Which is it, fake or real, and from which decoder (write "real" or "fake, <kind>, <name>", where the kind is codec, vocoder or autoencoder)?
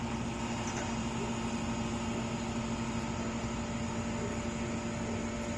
real